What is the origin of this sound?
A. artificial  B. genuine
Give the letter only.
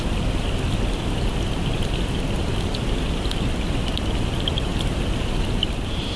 B